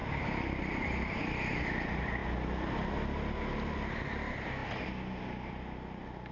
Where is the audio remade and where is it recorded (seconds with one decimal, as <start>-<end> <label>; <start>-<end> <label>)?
0.0-6.3 recorded